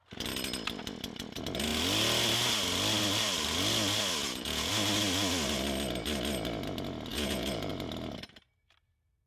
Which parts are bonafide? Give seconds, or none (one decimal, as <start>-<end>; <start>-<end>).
0.0-4.2; 4.7-7.1; 7.7-9.3